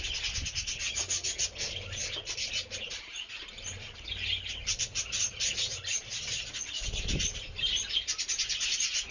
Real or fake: real